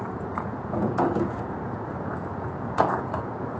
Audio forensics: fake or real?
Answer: fake